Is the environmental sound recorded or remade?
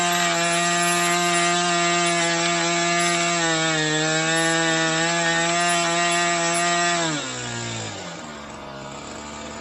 recorded